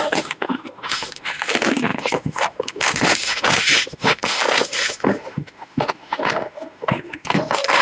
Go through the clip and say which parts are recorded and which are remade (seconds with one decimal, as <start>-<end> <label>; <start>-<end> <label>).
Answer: 0.0-7.8 remade